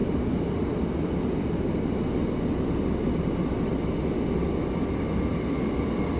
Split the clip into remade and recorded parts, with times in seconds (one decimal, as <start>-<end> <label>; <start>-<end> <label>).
0.0-6.2 recorded